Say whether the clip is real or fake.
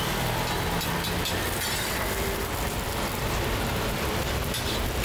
fake